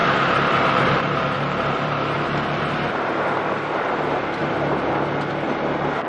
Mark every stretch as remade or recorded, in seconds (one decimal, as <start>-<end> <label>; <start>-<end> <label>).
0.0-3.7 remade; 3.7-6.1 recorded